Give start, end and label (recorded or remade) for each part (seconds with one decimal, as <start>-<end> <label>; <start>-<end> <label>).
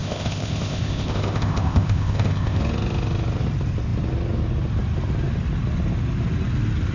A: 0.0-2.6 remade; 2.6-6.9 recorded